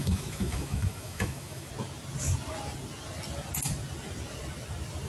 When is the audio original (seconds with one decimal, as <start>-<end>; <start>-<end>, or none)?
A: 1.7-5.1